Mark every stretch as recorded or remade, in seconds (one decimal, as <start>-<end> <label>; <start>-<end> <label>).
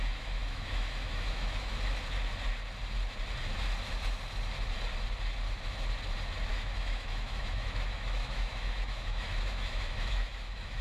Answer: 0.0-1.7 remade; 1.7-6.5 recorded; 6.5-10.8 remade